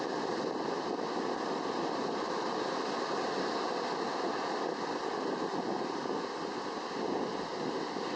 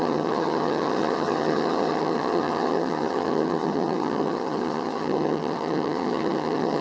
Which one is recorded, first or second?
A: first